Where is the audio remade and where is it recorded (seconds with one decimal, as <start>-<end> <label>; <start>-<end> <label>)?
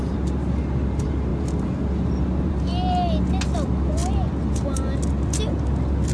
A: 0.0-6.1 recorded